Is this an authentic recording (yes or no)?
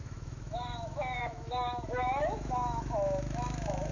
no